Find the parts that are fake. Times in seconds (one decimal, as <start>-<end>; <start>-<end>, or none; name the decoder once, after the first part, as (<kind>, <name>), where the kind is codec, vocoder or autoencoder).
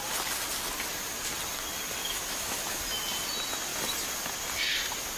2.0-2.8 (autoencoder, DAC-VAE)